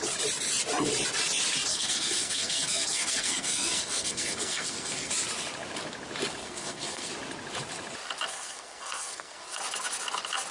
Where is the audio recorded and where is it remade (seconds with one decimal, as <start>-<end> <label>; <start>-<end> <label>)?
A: 0.0-1.7 recorded; 1.7-5.1 remade; 5.1-6.4 recorded; 6.4-7.1 remade; 7.1-8.3 recorded; 8.3-9.6 remade; 9.6-10.5 recorded